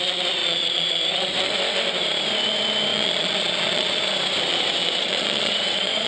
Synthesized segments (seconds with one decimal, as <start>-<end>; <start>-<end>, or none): 0.4-1.0; 2.9-4.0; 4.5-6.1